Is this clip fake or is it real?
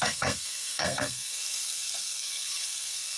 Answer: fake